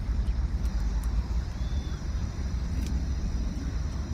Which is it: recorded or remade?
remade